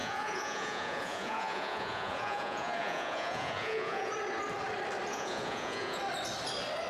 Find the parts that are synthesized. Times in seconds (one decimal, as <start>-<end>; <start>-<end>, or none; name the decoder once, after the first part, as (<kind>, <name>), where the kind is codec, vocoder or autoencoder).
0.0-4.1 (vocoder, Vocos); 5.1-6.0